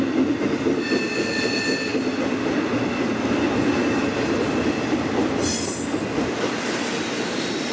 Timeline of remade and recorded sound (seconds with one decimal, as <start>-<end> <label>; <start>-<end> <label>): 0.0-7.7 recorded